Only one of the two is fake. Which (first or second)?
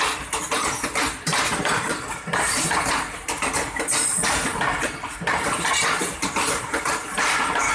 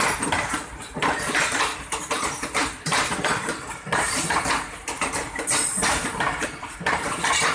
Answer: second